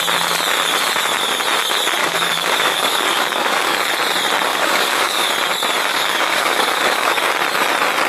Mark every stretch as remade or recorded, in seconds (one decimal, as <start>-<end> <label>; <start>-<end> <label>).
0.0-2.0 recorded; 2.0-3.9 remade; 3.9-4.5 recorded; 4.5-5.3 remade; 5.3-5.9 recorded; 5.9-7.3 remade; 7.3-8.1 recorded